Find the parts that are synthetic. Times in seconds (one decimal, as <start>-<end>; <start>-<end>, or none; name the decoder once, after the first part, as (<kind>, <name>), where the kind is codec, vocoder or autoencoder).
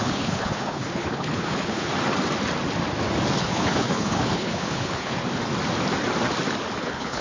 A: 0.0-1.9 (codec, HILCodec); 3.4-5.2; 6.8-7.2